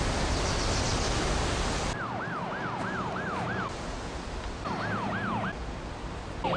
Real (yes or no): yes